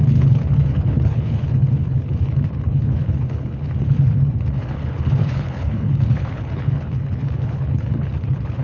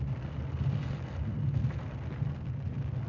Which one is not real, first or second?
first